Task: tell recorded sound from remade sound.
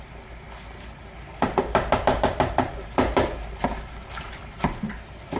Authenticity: recorded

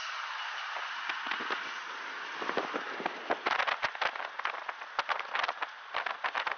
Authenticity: recorded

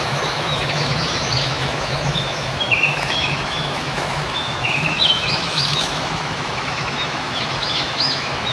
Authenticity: remade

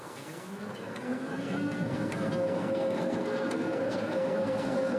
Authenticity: remade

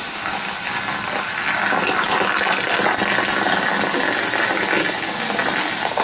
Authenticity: recorded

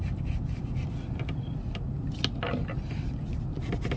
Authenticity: recorded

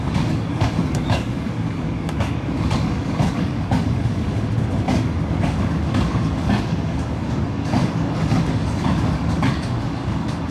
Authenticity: remade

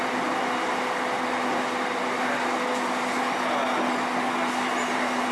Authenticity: recorded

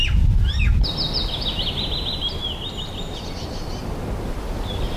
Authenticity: recorded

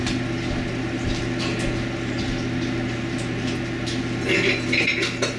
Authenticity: recorded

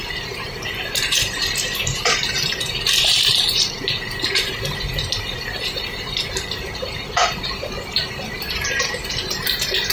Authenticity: remade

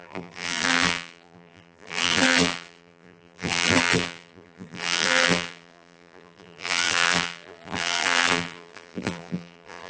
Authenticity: remade